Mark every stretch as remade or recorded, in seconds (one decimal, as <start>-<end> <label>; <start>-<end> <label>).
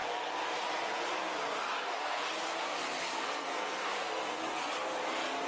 0.0-1.6 recorded; 1.6-2.2 remade; 2.2-3.1 recorded; 3.1-4.6 remade; 4.6-5.5 recorded